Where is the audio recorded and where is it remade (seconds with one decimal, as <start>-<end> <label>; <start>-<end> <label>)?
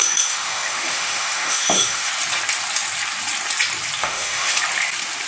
0.0-2.1 remade; 2.1-4.0 recorded; 4.0-4.6 remade; 4.6-5.3 recorded